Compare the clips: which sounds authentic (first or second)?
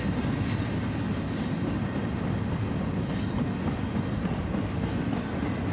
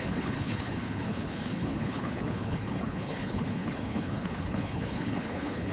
first